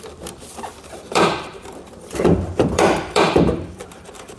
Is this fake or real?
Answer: fake